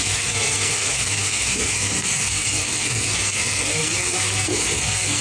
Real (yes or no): no